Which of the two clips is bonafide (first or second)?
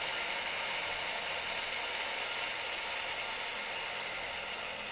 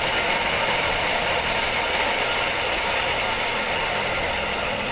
first